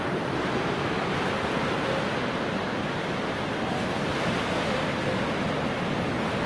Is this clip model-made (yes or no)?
no